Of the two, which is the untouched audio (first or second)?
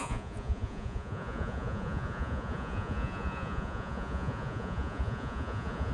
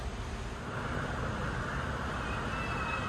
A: second